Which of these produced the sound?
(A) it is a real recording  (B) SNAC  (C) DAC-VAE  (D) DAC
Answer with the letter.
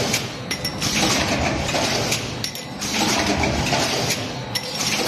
A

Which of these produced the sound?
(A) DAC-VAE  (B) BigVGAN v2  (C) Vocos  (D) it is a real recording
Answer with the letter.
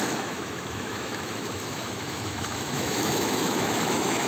A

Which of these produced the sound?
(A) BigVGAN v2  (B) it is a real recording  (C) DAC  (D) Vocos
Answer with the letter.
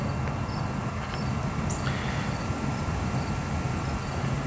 B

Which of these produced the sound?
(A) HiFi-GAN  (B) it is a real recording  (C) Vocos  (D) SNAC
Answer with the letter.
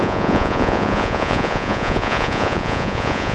C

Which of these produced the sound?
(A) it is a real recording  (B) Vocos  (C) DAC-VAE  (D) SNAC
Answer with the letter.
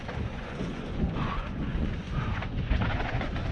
B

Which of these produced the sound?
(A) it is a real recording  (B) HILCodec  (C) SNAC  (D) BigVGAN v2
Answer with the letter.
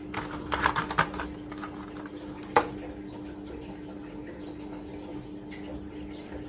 A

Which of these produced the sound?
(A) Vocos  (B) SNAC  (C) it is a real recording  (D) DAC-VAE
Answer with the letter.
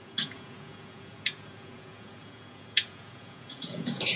A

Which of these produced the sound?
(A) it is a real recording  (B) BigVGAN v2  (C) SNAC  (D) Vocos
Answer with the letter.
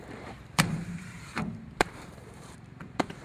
B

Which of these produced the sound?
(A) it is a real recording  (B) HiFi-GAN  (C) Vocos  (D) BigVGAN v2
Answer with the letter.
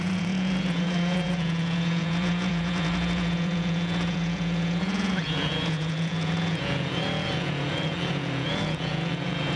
C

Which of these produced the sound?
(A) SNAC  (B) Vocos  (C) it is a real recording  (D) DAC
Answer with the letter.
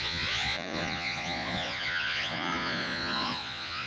B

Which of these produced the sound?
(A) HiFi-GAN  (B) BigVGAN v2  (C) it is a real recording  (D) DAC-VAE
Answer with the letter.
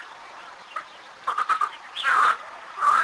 B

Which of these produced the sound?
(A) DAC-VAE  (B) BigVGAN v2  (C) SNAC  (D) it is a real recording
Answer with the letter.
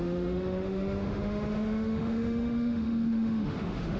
A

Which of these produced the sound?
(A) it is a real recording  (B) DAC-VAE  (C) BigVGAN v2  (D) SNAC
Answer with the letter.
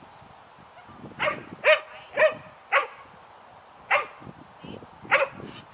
A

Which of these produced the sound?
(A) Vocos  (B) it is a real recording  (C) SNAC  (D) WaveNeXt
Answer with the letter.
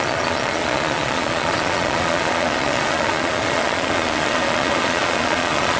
A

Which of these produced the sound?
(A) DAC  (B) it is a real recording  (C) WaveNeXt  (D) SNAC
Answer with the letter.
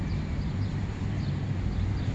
B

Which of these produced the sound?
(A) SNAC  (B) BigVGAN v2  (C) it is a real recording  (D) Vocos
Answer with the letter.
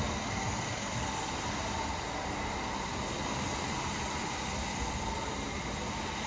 C